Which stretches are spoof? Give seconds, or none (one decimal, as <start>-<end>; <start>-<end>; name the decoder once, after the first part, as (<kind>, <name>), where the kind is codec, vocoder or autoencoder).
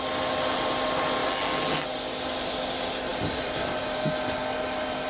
0.0-1.2 (vocoder, BigVGAN v2); 1.7-5.1